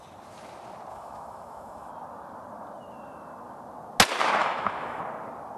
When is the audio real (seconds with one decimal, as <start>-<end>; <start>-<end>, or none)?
0.0-0.9; 1.9-4.4; 5.0-5.6